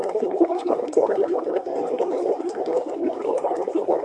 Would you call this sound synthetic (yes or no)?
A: yes